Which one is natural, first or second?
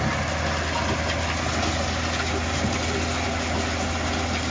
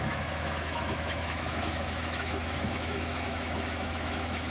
first